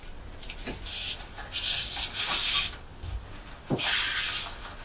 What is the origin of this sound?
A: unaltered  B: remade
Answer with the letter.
A